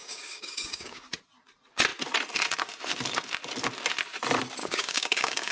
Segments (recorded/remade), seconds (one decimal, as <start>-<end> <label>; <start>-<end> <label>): 0.0-1.0 remade; 1.0-4.6 recorded; 4.6-5.5 remade